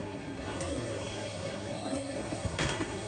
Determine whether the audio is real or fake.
fake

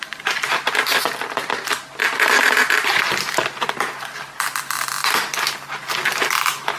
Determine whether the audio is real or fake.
real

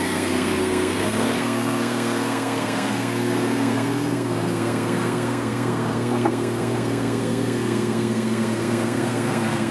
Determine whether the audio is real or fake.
fake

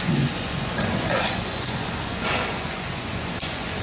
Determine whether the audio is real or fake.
fake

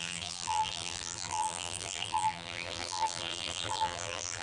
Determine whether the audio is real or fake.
fake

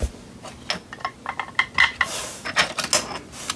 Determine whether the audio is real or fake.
real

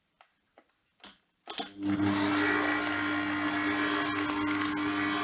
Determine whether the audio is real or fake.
real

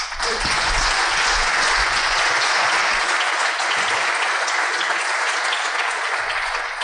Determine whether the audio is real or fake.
fake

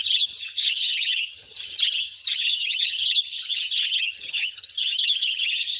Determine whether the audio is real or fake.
fake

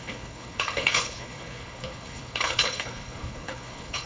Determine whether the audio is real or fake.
fake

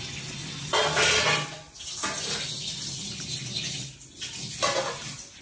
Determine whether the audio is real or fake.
real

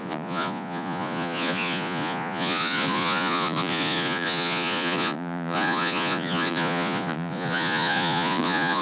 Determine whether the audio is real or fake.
fake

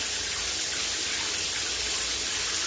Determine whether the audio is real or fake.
real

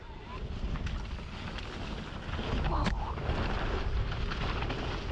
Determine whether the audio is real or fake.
real